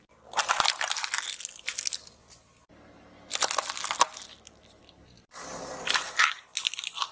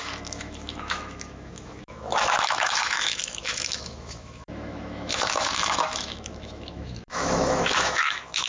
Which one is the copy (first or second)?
second